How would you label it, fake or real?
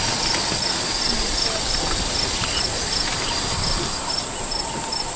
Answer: real